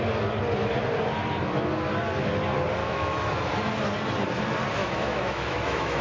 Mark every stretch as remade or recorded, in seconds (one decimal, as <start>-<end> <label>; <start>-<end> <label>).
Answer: 0.0-2.8 recorded; 2.8-3.4 remade; 3.4-4.8 recorded; 4.8-6.0 remade